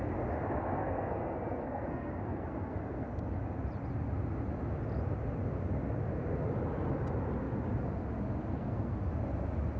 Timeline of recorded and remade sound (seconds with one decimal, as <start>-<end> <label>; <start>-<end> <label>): 0.0-0.6 recorded; 0.6-3.4 remade; 3.4-8.5 recorded; 8.5-9.1 remade; 9.1-9.8 recorded